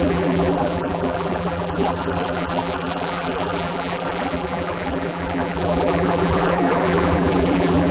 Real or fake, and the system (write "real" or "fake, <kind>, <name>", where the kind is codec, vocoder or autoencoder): fake, vocoder, BigVGAN v2